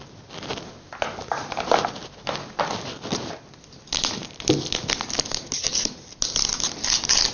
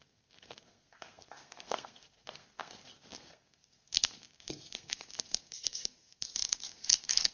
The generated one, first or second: second